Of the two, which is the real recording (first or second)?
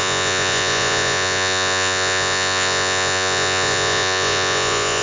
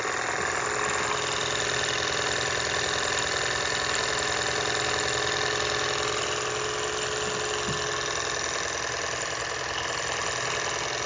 second